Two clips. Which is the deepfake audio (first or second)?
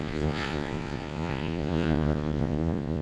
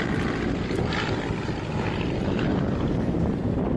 first